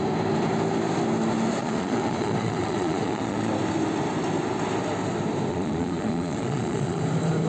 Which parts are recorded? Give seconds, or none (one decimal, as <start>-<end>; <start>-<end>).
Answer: 0.0-1.6; 3.5-5.5; 7.0-7.5